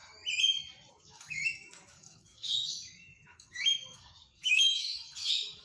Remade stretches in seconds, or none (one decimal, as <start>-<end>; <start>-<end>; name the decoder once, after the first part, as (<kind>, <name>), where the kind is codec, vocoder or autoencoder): 0.9-5.6 (codec, DAC)